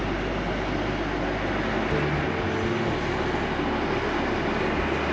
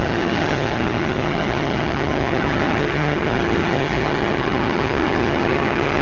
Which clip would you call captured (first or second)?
first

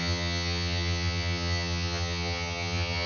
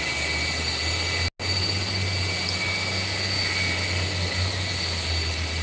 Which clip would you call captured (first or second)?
second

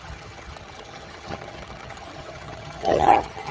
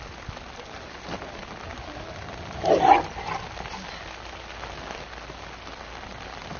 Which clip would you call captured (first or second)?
second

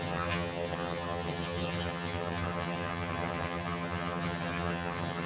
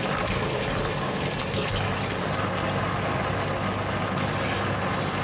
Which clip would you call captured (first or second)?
second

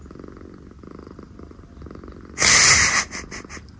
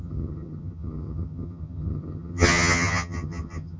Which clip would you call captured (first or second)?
first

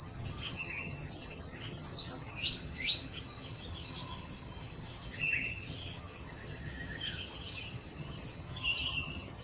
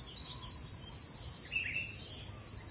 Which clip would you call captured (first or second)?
second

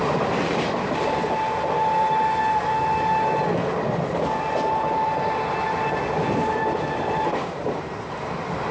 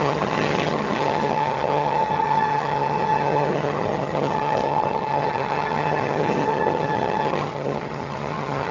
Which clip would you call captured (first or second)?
first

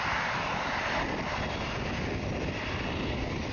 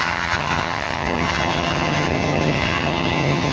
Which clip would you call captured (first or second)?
first